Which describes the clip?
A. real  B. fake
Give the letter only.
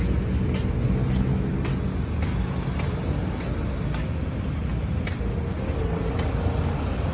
A